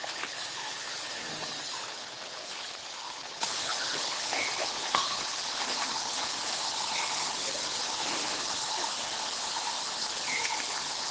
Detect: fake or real fake